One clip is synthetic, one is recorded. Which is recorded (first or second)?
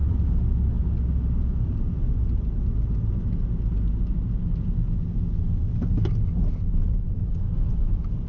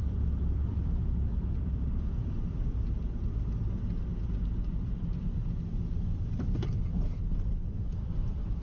first